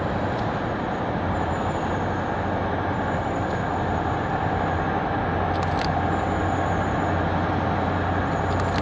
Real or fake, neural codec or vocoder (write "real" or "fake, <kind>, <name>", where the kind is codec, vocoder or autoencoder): real